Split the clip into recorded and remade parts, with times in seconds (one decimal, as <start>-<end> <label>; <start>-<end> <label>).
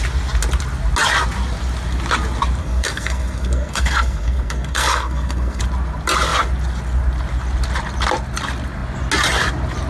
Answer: 0.0-2.6 recorded; 2.6-5.6 remade; 5.6-9.9 recorded